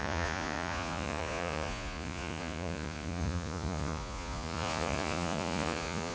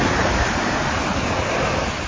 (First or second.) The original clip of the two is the second